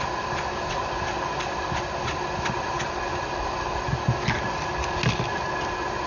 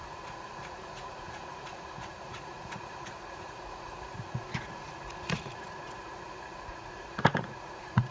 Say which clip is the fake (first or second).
second